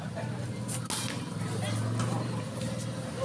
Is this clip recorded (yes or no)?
yes